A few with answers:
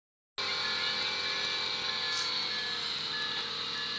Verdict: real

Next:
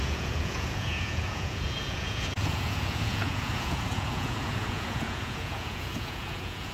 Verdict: fake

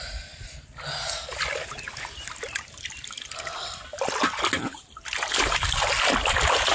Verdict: real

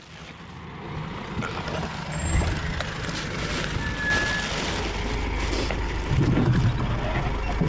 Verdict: real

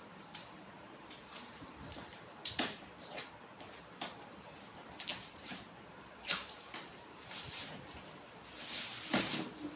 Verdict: fake